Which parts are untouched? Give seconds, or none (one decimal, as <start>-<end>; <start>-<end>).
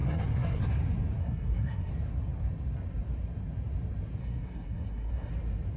0.6-1.2; 1.9-4.2; 5.3-5.8